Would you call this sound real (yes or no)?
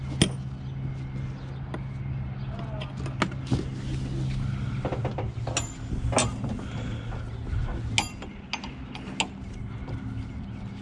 yes